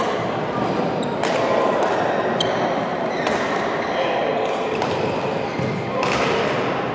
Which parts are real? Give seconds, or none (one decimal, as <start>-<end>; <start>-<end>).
0.0-6.9